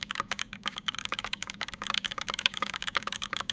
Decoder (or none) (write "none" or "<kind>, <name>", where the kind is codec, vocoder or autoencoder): codec, DAC